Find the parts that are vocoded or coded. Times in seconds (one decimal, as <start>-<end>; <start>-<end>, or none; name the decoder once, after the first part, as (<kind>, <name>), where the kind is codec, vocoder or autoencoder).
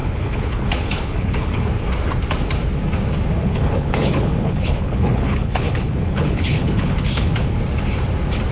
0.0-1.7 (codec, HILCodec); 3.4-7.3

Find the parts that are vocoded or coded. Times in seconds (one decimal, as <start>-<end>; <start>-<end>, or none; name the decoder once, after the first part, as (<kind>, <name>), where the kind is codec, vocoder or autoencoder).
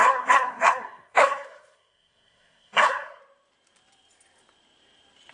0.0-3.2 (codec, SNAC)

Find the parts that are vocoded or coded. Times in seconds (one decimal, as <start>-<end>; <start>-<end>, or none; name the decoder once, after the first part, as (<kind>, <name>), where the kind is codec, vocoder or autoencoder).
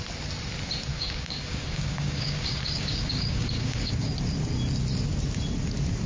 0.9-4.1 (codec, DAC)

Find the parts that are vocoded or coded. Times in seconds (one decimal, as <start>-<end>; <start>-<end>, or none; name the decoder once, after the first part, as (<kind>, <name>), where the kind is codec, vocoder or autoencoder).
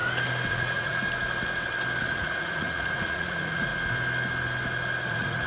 0.5-1.0 (vocoder, Vocos); 2.0-3.7; 5.1-5.5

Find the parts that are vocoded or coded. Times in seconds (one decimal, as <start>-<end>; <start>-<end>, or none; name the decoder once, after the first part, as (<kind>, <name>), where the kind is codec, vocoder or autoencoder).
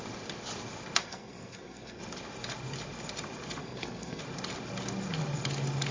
1.0-2.0 (codec, SNAC); 3.6-4.2